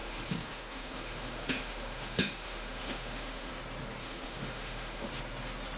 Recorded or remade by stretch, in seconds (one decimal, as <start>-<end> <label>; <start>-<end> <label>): 0.0-3.5 remade; 3.5-4.0 recorded; 4.0-5.2 remade; 5.2-5.8 recorded